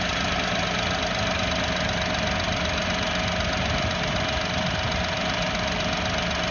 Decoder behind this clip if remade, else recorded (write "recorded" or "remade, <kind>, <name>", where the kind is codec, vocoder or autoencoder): recorded